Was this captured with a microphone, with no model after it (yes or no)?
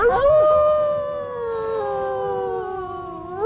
yes